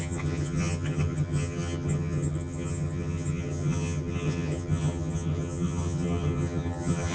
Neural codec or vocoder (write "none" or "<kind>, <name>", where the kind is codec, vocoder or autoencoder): vocoder, HiFi-GAN